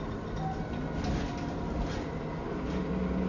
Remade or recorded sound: recorded